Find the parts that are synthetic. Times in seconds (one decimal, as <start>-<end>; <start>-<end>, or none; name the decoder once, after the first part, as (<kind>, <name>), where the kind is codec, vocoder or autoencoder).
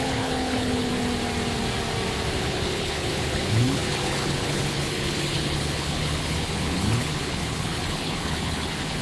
0.0-0.9 (codec, HILCodec); 2.4-9.0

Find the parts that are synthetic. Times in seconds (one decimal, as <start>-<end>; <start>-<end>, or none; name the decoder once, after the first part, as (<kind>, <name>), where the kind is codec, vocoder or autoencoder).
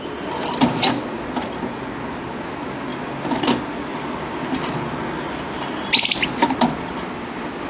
none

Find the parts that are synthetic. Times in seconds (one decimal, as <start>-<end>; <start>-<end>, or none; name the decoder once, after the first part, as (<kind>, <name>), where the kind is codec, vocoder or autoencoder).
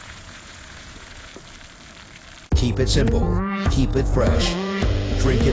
0.0-1.3 (vocoder, Vocos); 2.9-5.5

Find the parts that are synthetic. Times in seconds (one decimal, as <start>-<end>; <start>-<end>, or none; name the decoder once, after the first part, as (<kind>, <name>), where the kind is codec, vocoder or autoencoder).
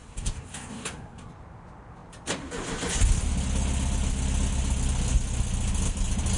0.0-1.3 (codec, SNAC)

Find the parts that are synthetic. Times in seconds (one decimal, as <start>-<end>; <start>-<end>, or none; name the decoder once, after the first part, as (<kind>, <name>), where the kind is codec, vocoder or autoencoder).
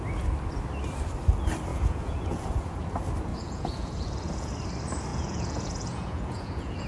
1.7-2.9 (vocoder, Vocos); 3.3-4.5; 5.1-6.9